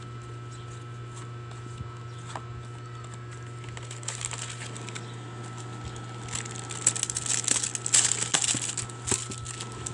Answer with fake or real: real